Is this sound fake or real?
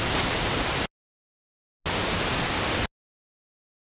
real